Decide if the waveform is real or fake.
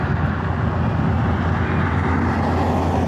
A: real